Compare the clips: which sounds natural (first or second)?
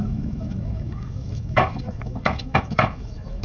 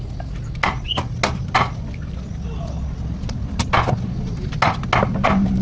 second